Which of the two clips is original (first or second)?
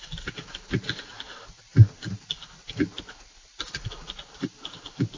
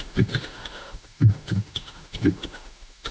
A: first